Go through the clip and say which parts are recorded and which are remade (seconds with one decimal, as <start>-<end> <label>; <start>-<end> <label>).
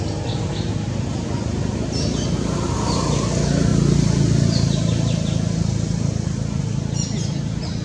0.0-7.8 recorded